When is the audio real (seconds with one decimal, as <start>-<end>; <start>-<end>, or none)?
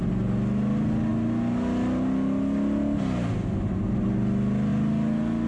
0.0-5.5